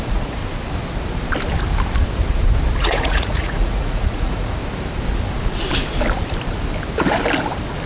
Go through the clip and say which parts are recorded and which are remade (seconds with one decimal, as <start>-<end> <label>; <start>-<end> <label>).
0.0-0.4 remade; 0.4-2.8 recorded; 2.8-4.6 remade; 4.6-7.9 recorded